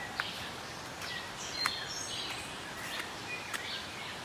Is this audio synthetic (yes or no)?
no